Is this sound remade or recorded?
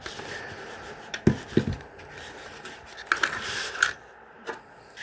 recorded